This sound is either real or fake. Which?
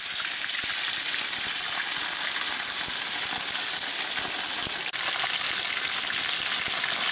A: real